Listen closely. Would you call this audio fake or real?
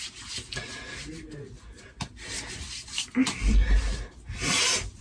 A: real